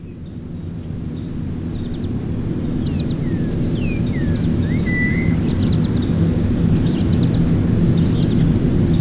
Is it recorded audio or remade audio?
recorded